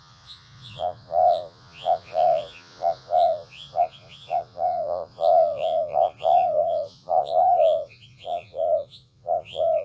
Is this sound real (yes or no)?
no